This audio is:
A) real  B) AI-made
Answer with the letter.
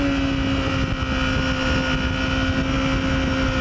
A